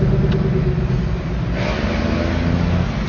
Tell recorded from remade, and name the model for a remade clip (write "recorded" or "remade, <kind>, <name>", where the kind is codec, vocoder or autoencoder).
recorded